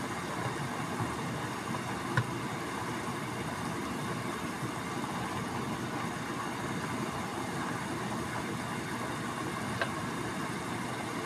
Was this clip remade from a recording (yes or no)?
no